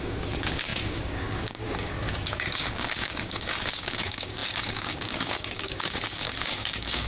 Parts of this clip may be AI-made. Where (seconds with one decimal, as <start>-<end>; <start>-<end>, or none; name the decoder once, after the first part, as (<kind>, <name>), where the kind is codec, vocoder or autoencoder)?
0.0-7.1 (codec, DAC)